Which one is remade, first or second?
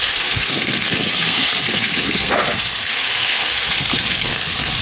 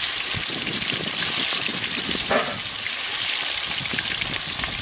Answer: first